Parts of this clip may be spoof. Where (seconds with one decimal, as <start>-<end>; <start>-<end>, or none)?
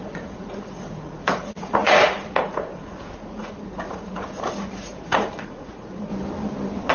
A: 0.0-6.1